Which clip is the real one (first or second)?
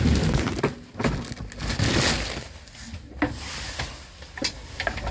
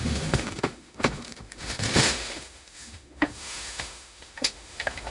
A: first